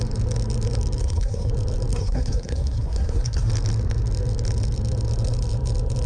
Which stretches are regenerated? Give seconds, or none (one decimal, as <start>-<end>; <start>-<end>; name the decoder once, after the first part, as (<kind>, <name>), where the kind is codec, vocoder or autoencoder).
1.0-1.5 (codec, SNAC); 1.9-3.5